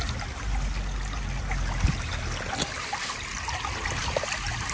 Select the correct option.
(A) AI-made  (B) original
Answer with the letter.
B